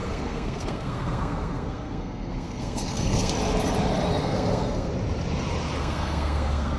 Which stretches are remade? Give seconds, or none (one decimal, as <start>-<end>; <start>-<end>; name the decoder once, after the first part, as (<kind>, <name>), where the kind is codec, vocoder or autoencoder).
0.0-3.3 (codec, SNAC); 4.2-4.9; 5.8-6.8

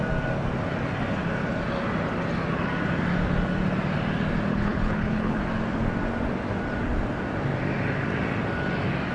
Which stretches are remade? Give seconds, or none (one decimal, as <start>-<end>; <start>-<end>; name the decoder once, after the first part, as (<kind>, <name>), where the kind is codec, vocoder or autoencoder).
4.5-5.4 (codec, HILCodec)